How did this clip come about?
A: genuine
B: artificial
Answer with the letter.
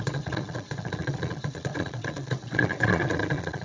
B